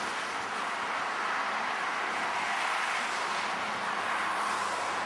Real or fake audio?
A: real